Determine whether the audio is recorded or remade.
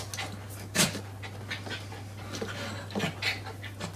recorded